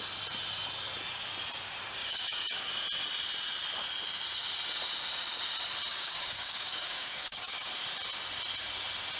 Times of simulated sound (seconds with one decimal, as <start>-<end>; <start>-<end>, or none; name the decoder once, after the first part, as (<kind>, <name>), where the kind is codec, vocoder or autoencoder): 2.0-2.7 (codec, DAC); 5.9-7.7